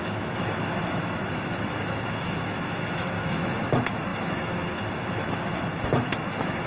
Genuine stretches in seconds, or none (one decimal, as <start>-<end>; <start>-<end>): none